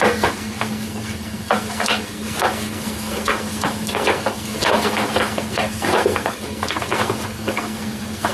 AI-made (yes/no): yes